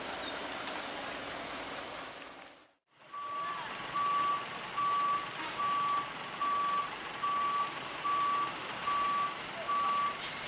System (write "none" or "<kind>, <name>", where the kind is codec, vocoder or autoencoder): none